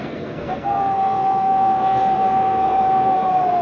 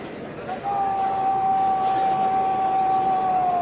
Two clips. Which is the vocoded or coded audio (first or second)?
first